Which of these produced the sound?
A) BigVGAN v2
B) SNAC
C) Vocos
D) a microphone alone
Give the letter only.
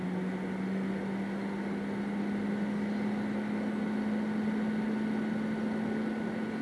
D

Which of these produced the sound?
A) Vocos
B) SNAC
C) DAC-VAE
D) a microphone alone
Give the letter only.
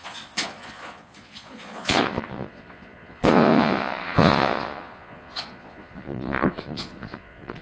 A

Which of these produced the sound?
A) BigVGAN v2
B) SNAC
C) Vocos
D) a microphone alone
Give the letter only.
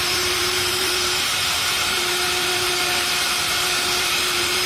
A